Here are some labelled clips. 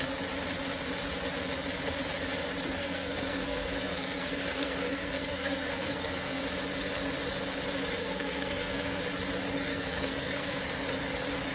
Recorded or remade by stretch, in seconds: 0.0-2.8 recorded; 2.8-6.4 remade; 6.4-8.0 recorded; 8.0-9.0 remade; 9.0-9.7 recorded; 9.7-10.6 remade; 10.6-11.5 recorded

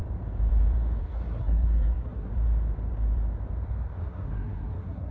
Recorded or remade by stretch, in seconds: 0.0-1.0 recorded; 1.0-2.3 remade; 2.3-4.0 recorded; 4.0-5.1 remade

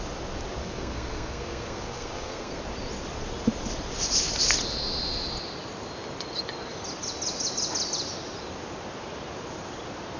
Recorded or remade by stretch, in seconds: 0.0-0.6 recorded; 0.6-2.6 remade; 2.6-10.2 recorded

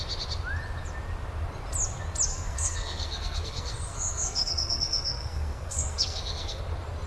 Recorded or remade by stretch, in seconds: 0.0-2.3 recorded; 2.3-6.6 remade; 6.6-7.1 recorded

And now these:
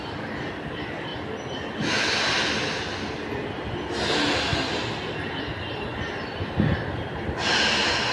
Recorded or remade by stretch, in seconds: 0.0-8.1 recorded

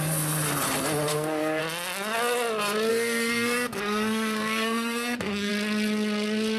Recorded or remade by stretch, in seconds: 0.0-1.1 recorded; 1.1-1.6 remade; 1.6-2.9 recorded; 2.9-5.5 remade; 5.5-6.6 recorded

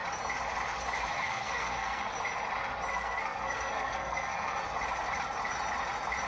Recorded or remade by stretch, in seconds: 0.0-1.1 recorded; 1.1-2.1 remade; 2.1-2.9 recorded; 2.9-4.6 remade; 4.6-6.3 recorded